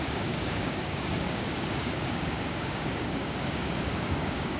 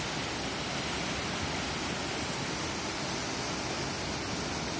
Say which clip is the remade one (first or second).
first